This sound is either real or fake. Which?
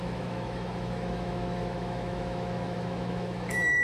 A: fake